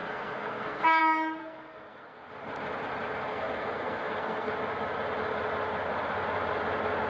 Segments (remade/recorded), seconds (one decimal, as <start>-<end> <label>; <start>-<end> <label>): 0.0-1.0 remade; 1.0-1.4 recorded; 1.4-2.3 remade; 2.3-3.3 recorded; 3.3-4.5 remade; 4.5-7.1 recorded

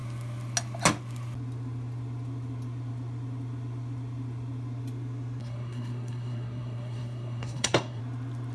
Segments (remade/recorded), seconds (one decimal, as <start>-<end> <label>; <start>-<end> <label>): 0.0-5.4 recorded; 5.4-8.0 remade; 8.0-8.5 recorded

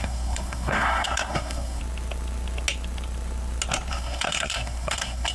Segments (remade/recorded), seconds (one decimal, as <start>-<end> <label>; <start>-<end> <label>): 0.0-1.8 remade; 1.8-3.9 recorded; 3.9-5.3 remade

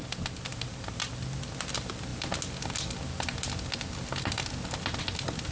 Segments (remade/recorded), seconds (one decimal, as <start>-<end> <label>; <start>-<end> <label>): 0.0-0.5 recorded; 0.5-1.1 remade; 1.1-5.5 recorded

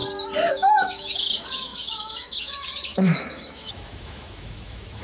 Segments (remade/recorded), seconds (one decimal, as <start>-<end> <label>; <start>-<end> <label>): 0.0-0.5 recorded; 0.5-5.0 remade

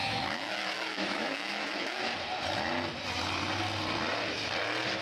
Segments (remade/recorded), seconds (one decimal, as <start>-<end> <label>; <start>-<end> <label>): 0.0-2.1 remade; 2.1-5.0 recorded

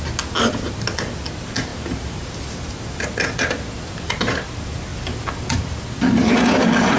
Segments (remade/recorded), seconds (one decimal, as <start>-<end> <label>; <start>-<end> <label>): 0.0-7.0 recorded

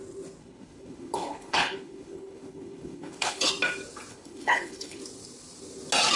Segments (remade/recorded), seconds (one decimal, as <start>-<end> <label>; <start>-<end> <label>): 0.0-0.4 recorded; 0.4-3.5 remade; 3.5-4.1 recorded; 4.1-5.0 remade; 5.0-6.2 recorded